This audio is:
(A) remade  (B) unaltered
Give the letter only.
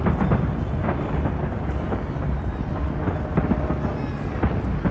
B